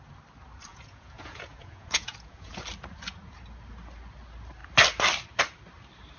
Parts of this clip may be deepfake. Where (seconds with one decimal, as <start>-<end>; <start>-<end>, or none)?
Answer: 0.7-2.5